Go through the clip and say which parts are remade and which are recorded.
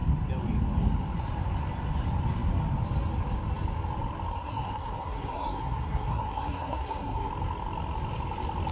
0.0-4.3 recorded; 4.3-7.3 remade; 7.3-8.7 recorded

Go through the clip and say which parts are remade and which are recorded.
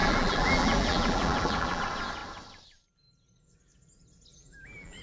0.0-1.8 remade; 1.8-4.3 recorded; 4.3-5.0 remade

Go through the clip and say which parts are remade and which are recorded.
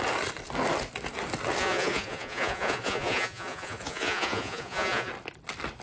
0.0-1.6 recorded; 1.6-5.1 remade; 5.1-5.8 recorded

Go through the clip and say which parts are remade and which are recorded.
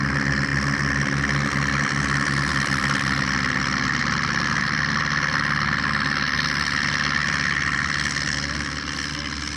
0.0-2.5 recorded; 2.5-3.2 remade; 3.2-4.0 recorded; 4.0-5.0 remade; 5.0-7.2 recorded; 7.2-7.9 remade; 7.9-9.6 recorded